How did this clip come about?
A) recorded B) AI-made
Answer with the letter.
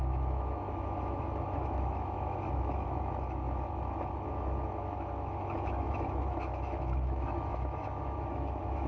B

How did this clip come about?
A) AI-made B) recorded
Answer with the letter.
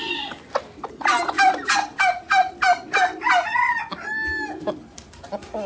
B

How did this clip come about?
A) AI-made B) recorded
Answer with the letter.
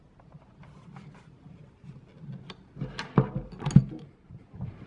B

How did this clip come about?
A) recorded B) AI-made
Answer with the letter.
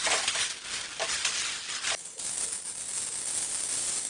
A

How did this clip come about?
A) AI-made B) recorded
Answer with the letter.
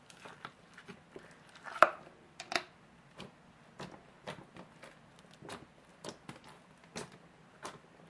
B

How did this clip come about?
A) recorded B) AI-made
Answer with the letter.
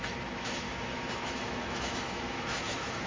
B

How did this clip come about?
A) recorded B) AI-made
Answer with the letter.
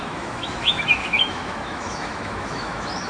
B